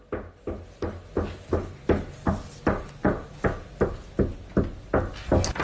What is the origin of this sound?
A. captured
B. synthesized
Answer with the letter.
A